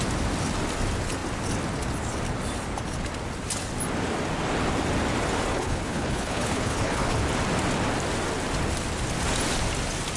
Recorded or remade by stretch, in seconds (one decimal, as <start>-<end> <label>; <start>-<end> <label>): 0.0-5.5 recorded; 5.5-7.2 remade; 7.2-10.2 recorded